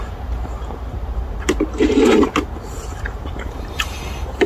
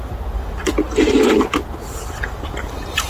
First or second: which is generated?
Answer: first